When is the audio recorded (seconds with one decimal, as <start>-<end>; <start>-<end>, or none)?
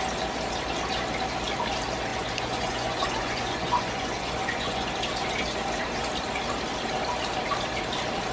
0.0-2.1; 4.9-8.3